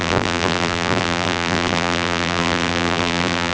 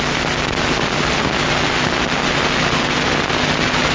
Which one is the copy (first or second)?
first